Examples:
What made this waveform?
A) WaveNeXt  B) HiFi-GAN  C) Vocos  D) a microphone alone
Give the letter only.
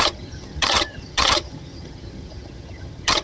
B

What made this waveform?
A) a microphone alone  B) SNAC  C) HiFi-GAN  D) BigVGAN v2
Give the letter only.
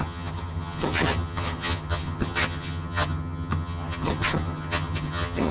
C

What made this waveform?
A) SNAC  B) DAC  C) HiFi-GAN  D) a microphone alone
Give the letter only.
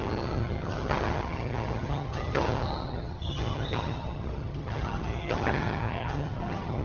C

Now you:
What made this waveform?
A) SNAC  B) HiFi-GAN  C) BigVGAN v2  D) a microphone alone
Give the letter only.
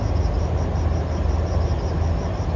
D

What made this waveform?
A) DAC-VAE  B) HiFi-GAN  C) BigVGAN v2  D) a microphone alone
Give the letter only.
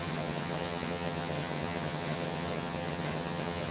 B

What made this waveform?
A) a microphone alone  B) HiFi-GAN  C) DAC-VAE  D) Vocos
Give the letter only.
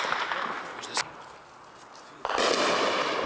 A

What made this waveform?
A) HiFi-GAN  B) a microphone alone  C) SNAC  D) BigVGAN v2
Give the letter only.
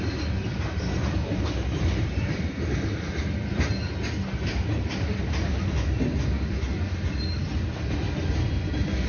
B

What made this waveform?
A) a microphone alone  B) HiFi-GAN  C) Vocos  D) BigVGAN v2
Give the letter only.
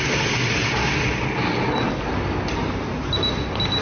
A